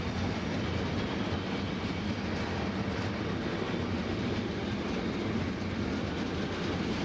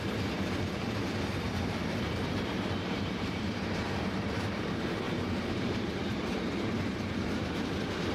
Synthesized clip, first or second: second